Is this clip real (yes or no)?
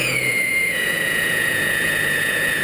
no